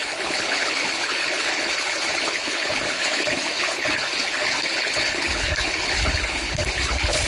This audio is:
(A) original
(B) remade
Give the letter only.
B